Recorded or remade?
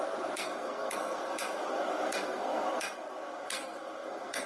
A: remade